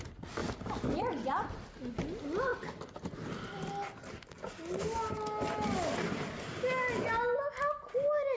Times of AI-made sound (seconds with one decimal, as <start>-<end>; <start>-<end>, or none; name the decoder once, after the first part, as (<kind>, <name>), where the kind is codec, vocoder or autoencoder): none